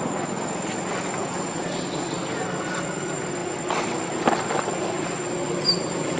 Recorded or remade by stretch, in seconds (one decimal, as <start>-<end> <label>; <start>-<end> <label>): 0.0-6.2 recorded